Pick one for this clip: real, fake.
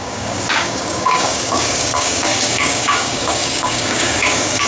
fake